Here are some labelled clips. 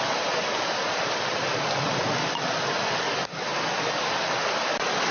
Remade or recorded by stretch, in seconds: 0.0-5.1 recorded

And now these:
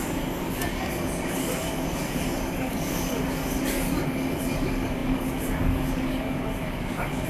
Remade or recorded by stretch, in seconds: 0.0-7.3 remade

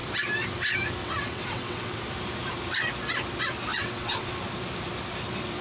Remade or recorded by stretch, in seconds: 0.0-1.0 recorded; 1.0-2.0 remade; 2.0-3.7 recorded; 3.7-4.3 remade; 4.3-5.6 recorded

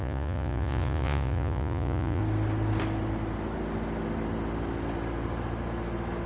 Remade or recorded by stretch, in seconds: 0.0-2.2 remade; 2.2-6.3 recorded

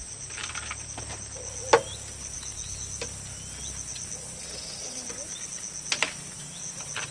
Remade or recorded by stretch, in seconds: 0.0-7.1 recorded

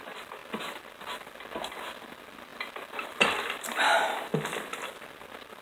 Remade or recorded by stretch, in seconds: 0.0-5.6 recorded

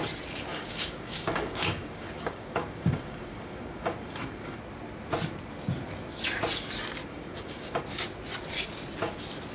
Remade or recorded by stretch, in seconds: 0.0-0.5 recorded; 0.5-4.6 remade; 4.6-7.1 recorded; 7.1-7.8 remade; 7.8-9.5 recorded